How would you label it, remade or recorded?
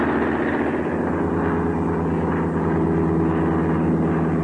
recorded